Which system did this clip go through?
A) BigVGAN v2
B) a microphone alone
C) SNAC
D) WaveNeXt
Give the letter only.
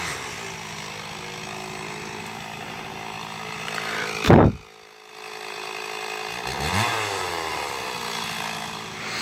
B